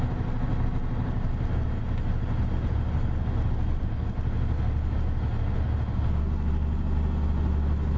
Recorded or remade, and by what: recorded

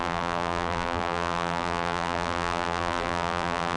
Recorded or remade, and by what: remade, vocoder, BigVGAN v2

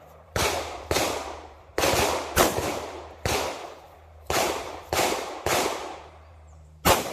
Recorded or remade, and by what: remade, vocoder, BigVGAN v2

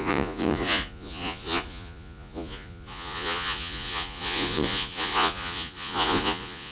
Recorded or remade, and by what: remade, vocoder, Vocos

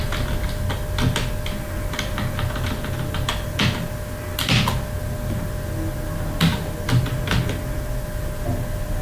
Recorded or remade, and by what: recorded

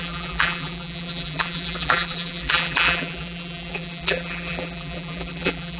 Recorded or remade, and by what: remade, vocoder, BigVGAN v2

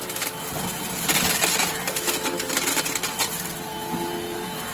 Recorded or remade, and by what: recorded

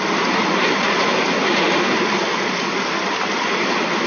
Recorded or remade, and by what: recorded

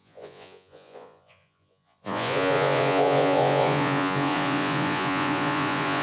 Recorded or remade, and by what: remade, vocoder, Vocos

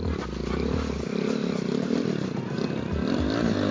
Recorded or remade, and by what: recorded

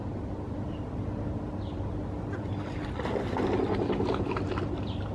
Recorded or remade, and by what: recorded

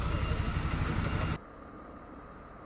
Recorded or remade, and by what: recorded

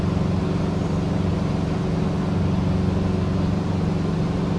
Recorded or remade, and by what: recorded